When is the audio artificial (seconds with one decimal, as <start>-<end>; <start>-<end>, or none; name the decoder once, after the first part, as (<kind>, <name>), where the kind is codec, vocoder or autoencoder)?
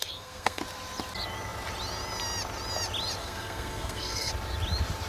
0.0-0.6 (codec, SNAC); 3.2-4.3